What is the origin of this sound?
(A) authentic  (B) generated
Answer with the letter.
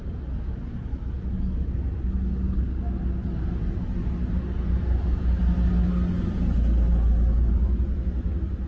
A